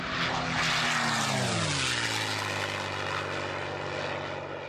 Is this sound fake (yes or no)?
no